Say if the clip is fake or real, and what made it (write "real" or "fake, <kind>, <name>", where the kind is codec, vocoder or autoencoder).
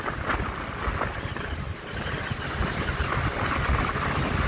real